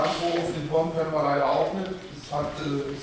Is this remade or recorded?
remade